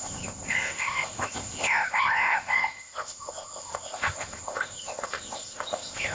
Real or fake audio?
fake